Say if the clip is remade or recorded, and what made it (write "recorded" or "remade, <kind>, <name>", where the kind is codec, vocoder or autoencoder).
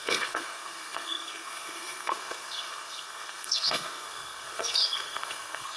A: remade, codec, SNAC